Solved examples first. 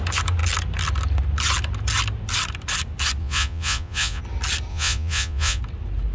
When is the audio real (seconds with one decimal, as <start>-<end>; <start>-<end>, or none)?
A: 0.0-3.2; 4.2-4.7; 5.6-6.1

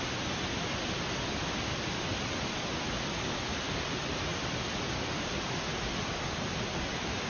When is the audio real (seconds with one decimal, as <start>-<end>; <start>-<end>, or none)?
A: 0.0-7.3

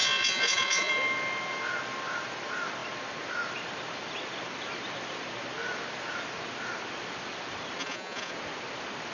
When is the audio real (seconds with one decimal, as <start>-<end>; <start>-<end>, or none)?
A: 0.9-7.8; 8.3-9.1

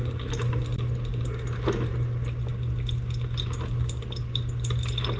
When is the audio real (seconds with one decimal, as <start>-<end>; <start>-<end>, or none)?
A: 0.0-5.2

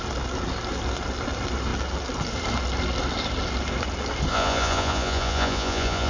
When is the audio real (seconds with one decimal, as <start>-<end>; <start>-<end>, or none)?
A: 0.0-4.3

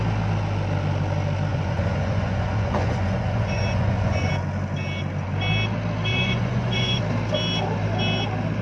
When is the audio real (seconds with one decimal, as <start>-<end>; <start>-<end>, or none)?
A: 0.0-1.5; 4.3-6.1; 7.0-8.6

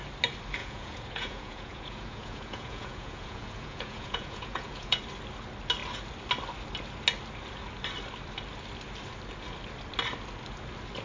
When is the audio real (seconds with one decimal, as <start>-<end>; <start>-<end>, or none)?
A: 0.0-0.6; 5.0-11.0

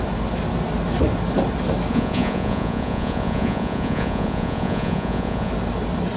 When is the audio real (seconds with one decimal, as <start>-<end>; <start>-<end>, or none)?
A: 0.0-1.9; 5.5-6.2